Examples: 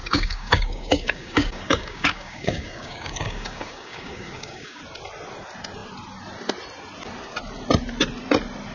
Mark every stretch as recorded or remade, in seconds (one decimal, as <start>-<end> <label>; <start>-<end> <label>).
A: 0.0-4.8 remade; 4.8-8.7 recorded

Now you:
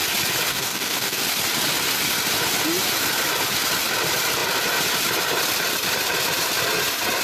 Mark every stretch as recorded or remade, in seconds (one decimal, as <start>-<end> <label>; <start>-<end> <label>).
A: 0.0-0.5 recorded; 0.5-1.2 remade; 1.2-7.2 recorded

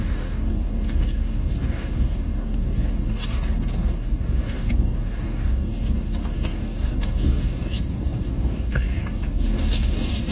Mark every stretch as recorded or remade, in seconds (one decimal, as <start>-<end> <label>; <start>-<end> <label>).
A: 0.0-10.3 remade

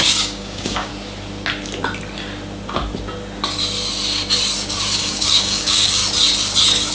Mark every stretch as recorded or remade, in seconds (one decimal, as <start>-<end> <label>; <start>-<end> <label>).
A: 0.0-0.9 remade; 0.9-5.0 recorded; 5.0-6.0 remade; 6.0-6.9 recorded

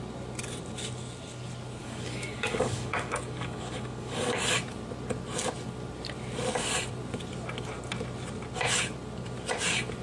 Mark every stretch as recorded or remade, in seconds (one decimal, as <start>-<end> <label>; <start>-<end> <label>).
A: 0.0-1.8 recorded; 1.8-4.4 remade; 4.4-10.0 recorded

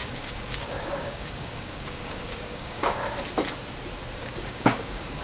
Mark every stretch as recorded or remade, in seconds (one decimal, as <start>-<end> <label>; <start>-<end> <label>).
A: 0.0-3.1 remade; 3.1-4.2 recorded; 4.2-5.2 remade